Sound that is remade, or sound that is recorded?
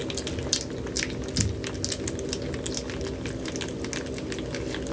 recorded